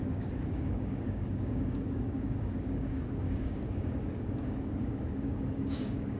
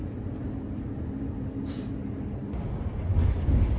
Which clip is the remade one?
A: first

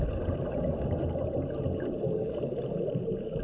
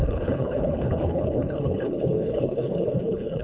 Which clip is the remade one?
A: second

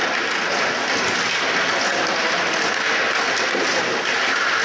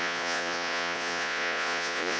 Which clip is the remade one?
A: second